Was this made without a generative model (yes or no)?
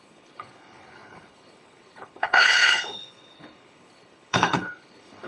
no